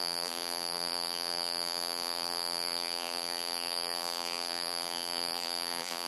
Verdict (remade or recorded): remade